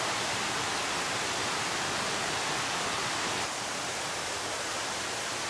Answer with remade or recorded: recorded